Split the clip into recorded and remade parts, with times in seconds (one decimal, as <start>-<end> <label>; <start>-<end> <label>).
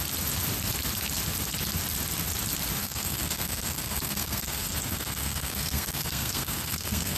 0.0-2.8 recorded; 2.8-7.2 remade